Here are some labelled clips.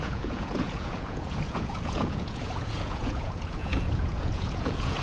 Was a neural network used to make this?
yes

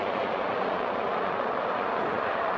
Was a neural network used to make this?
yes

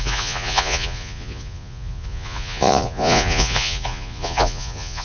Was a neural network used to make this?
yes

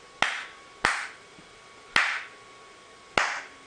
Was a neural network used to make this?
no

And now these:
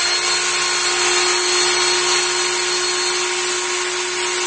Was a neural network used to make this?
no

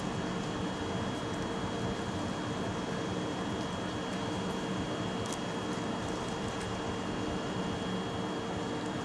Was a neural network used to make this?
no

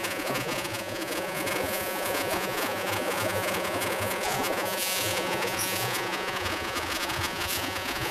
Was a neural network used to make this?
yes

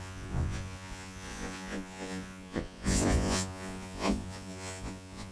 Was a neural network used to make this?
yes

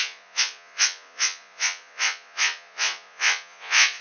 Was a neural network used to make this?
yes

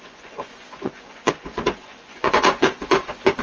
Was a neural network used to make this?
yes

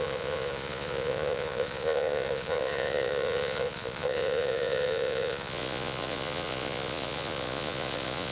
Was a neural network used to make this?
yes